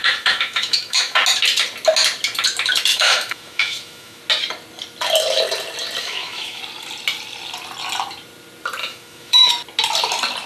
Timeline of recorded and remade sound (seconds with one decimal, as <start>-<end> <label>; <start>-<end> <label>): 0.0-1.2 remade; 1.2-2.9 recorded; 2.9-4.2 remade; 4.2-6.0 recorded; 6.0-6.6 remade; 6.6-8.8 recorded; 8.8-9.5 remade; 9.5-10.5 recorded